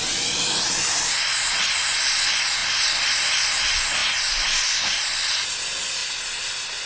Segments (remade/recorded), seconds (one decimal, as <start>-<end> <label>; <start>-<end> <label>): 0.0-6.9 recorded